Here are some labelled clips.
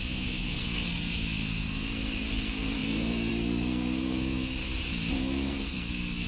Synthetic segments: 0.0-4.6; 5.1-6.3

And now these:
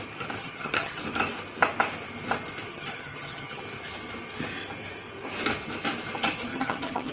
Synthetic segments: 0.4-1.0; 2.7-3.6; 6.5-7.1

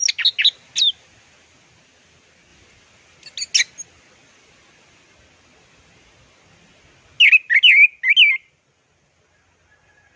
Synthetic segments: none

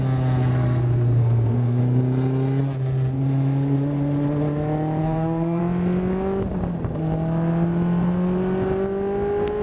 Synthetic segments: 0.5-1.8; 5.0-5.6